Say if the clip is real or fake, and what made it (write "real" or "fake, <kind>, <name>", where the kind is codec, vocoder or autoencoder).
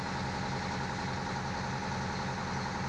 real